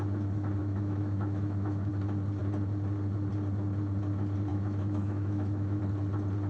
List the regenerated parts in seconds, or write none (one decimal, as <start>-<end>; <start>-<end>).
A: 0.6-1.9; 4.5-5.8